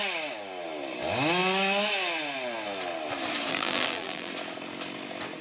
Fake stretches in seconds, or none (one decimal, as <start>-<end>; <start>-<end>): 3.5-4.3